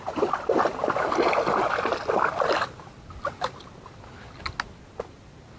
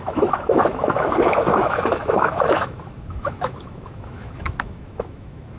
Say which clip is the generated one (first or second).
second